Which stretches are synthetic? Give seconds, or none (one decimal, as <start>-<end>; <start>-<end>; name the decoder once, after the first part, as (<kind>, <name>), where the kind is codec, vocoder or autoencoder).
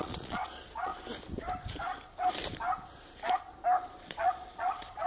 0.0-0.9 (vocoder, Vocos); 4.0-5.1